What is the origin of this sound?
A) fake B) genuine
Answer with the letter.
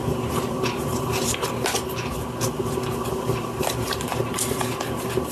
B